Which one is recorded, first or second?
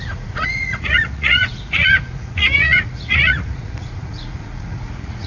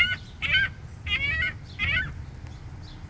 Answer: second